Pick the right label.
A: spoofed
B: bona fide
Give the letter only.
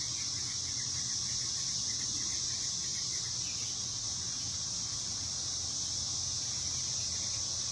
B